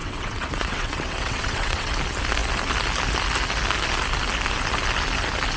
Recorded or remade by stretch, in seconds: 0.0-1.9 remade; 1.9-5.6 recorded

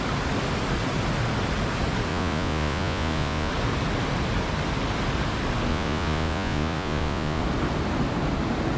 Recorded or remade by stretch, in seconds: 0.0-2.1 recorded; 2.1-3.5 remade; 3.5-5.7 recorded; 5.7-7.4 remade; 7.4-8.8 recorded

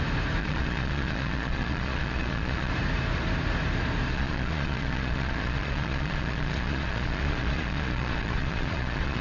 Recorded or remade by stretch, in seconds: 0.0-0.4 recorded; 0.4-2.7 remade; 2.7-4.1 recorded; 4.1-9.2 remade

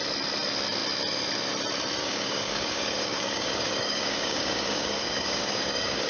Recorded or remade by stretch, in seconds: 0.0-2.0 recorded; 2.0-6.1 remade

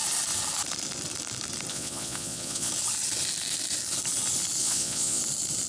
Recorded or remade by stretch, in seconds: 0.0-1.7 recorded; 1.7-2.7 remade; 2.7-4.6 recorded; 4.6-5.2 remade; 5.2-5.7 recorded

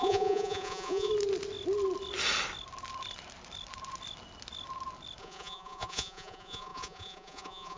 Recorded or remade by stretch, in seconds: 0.0-1.1 remade; 1.1-5.2 recorded; 5.2-7.8 remade

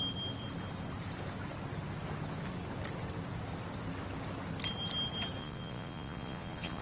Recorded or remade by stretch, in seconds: 0.0-5.4 recorded; 5.4-6.8 remade